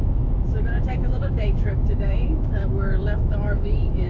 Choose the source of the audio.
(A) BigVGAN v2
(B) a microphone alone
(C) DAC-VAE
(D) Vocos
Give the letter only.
C